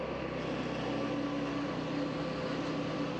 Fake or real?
real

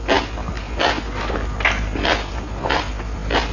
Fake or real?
real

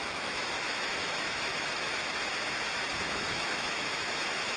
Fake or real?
fake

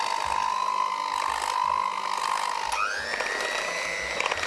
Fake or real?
real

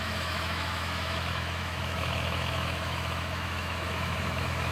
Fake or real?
fake